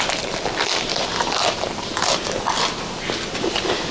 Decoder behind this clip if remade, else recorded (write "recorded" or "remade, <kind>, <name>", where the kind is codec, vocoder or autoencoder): recorded